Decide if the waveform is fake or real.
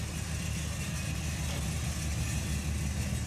real